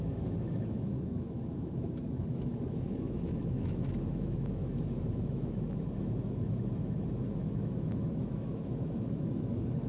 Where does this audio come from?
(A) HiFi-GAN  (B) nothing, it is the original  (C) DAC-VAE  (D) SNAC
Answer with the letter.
C